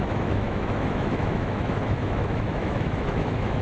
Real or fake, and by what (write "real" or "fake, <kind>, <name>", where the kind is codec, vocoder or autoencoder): fake, autoencoder, DAC-VAE